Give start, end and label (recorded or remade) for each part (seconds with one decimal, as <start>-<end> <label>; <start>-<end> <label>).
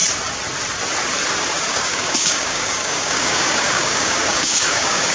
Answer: 0.0-1.7 recorded; 1.7-5.1 remade